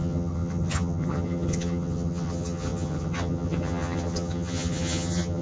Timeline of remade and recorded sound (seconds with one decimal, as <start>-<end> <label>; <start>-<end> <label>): 0.0-5.4 remade